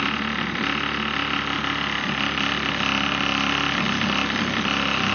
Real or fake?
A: real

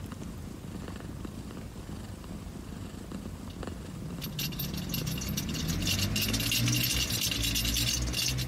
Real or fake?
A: real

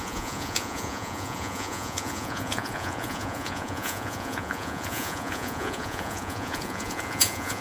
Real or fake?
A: fake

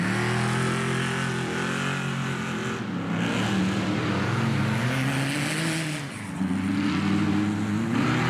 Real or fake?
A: real